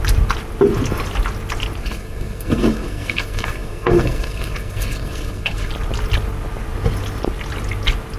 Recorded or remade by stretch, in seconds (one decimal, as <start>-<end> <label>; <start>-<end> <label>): 0.0-1.8 recorded; 1.8-5.7 remade; 5.7-8.2 recorded